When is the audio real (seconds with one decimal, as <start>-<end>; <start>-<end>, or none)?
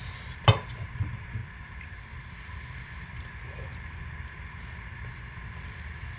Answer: 0.0-6.2